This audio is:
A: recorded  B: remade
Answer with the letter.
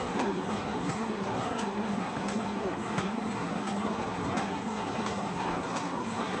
B